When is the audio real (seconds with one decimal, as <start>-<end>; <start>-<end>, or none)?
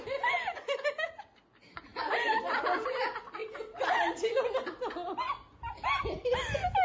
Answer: 0.0-6.8